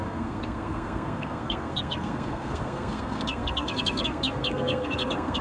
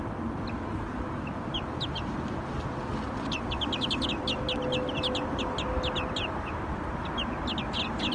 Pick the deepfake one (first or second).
first